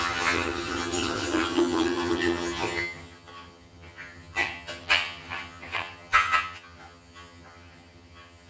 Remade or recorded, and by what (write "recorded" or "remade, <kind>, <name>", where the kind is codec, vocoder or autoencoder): remade, vocoder, HiFi-GAN